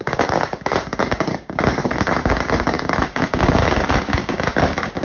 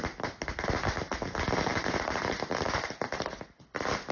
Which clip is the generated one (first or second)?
first